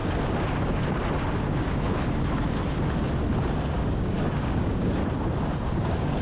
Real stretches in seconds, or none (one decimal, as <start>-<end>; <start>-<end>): 0.0-3.7; 5.0-5.7